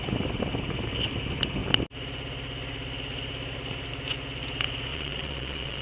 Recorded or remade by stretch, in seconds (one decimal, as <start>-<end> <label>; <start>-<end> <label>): 0.0-4.9 recorded; 4.9-5.8 remade